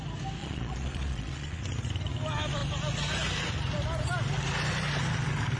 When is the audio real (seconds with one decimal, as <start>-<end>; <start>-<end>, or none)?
0.0-0.4; 1.6-5.6

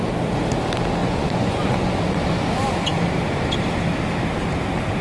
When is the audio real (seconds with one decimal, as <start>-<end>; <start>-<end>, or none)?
0.0-1.0; 2.4-5.0

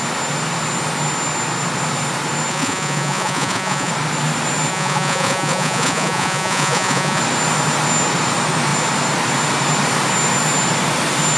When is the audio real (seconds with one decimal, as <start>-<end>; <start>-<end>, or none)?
0.0-2.5; 3.9-4.7; 7.2-11.4

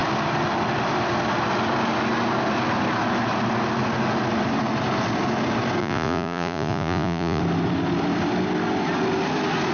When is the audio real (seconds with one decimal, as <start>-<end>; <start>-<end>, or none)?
0.0-5.8; 7.4-9.7

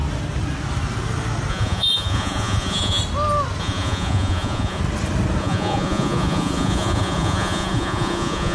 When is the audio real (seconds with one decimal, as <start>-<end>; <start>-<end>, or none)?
0.0-1.5; 3.0-3.6; 4.8-5.4

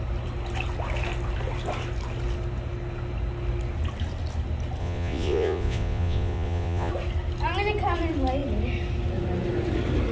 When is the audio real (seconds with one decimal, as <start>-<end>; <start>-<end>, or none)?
0.0-4.8; 6.9-10.1